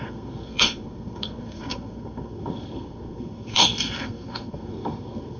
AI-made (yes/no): yes